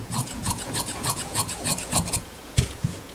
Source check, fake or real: fake